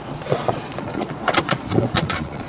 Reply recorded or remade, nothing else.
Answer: remade